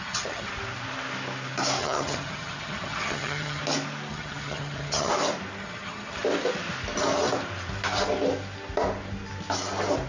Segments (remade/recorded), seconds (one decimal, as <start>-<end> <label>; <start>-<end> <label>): 0.0-0.5 remade; 0.5-1.8 recorded; 1.8-3.6 remade; 3.6-4.1 recorded; 4.1-5.1 remade; 5.1-5.6 recorded; 5.6-6.2 remade; 6.2-10.1 recorded